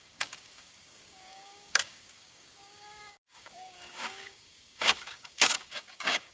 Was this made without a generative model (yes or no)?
no